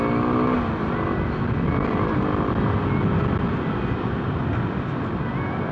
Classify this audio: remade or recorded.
recorded